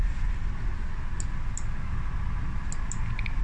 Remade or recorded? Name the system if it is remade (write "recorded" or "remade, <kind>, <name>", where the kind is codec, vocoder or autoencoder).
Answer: recorded